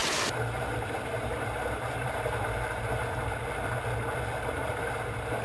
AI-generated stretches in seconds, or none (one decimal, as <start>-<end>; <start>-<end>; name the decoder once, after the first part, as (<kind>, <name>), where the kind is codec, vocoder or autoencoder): 0.0-3.2 (vocoder, BigVGAN v2)